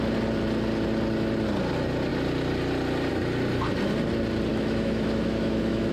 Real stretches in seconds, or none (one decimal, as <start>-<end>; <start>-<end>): 0.0-4.5